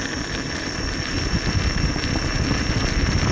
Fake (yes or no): no